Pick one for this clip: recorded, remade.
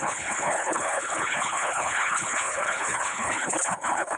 remade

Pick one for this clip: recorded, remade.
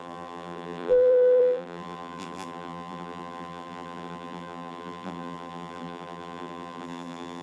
remade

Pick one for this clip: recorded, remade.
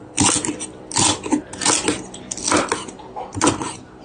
recorded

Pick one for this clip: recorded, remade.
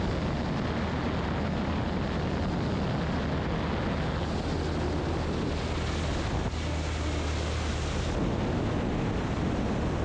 recorded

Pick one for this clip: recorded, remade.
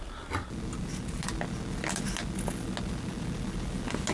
recorded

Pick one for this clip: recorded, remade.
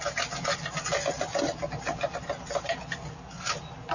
recorded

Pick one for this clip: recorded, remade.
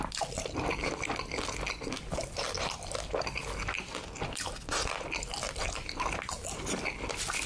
recorded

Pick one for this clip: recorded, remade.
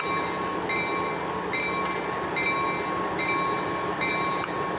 recorded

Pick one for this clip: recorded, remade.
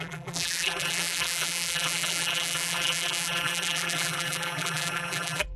remade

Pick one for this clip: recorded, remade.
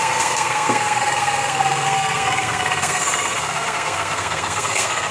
remade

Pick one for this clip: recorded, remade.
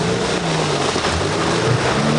recorded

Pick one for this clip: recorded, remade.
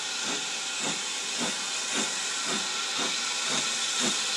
recorded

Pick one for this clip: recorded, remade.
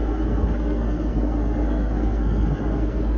remade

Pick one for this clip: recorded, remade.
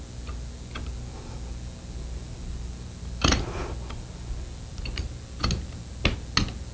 recorded